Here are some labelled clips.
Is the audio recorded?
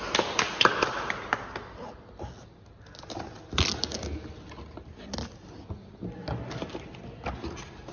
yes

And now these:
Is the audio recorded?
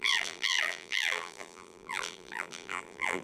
no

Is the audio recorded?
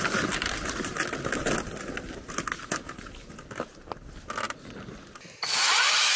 yes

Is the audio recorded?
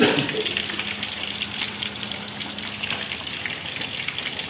yes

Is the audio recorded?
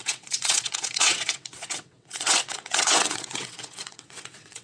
no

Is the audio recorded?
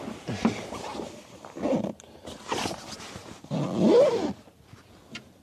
yes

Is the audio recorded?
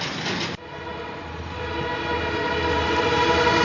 yes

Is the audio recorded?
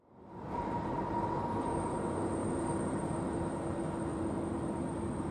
yes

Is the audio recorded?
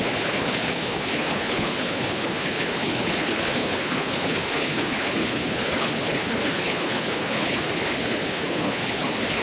no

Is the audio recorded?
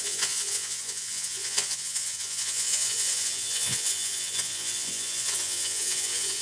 no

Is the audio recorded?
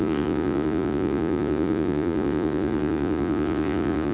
no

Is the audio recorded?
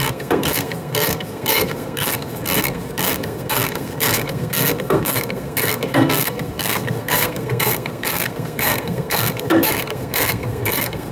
no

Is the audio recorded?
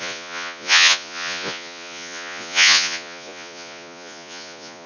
no